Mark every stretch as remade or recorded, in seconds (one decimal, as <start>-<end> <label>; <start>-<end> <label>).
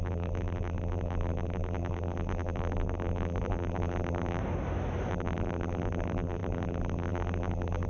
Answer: 0.0-4.4 remade; 4.4-5.1 recorded; 5.1-7.9 remade